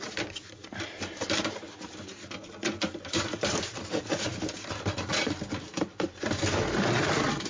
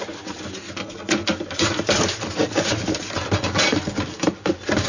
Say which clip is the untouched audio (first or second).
second